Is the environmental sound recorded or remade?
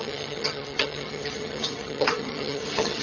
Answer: remade